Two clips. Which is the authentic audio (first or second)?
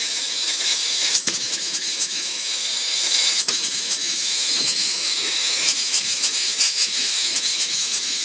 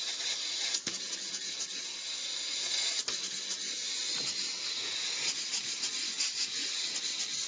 second